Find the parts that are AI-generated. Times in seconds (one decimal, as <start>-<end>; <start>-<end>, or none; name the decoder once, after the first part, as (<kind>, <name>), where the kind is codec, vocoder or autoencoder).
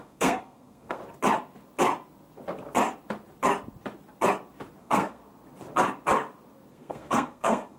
0.0-1.0 (codec, SNAC); 4.8-5.2; 6.7-7.8